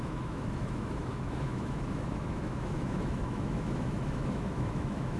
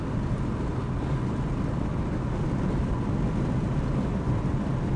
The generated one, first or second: first